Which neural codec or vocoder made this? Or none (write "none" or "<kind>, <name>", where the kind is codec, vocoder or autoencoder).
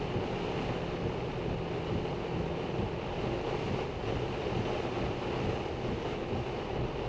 none